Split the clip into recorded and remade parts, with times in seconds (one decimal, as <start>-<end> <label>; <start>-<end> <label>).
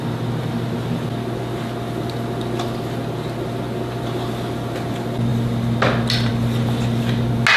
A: 0.0-7.6 recorded